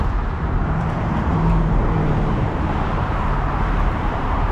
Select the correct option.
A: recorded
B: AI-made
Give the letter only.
B